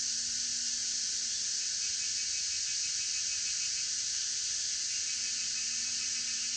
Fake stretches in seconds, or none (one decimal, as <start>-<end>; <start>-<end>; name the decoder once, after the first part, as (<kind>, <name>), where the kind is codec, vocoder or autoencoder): none